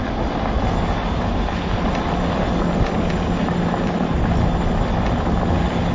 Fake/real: real